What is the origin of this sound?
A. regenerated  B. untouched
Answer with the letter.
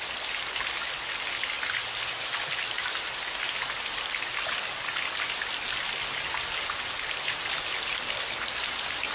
B